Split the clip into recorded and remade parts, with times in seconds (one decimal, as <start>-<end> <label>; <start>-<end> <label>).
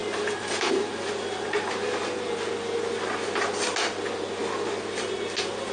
0.0-5.7 recorded